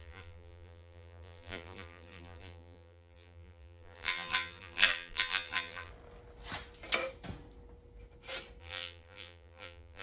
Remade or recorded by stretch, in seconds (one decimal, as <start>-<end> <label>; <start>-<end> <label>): 0.0-5.9 remade; 5.9-8.6 recorded; 8.6-10.0 remade